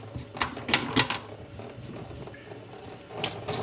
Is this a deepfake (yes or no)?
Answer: no